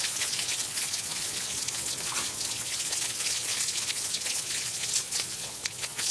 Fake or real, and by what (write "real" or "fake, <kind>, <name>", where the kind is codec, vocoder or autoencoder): fake, vocoder, Vocos